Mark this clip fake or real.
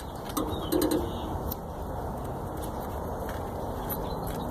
real